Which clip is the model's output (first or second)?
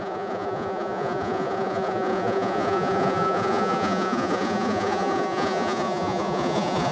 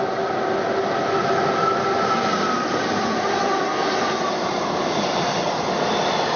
first